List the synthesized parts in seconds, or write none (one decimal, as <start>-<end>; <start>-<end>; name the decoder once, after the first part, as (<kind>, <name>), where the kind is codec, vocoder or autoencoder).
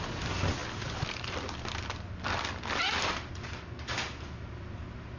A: none